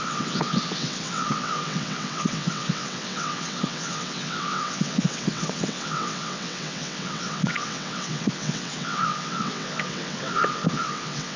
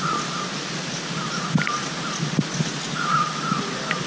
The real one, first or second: second